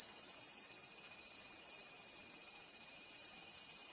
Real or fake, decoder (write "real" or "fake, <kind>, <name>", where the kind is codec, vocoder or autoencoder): real